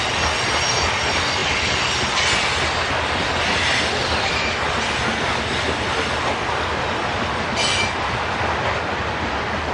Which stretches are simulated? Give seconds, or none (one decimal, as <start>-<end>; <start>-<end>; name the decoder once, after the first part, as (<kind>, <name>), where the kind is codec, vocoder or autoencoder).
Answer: none